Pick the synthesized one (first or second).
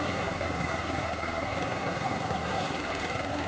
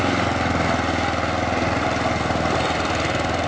first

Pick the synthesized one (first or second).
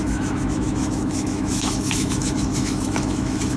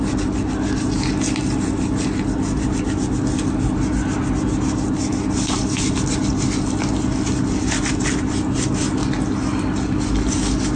first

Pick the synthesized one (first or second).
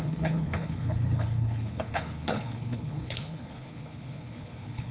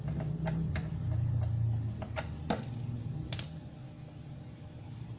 first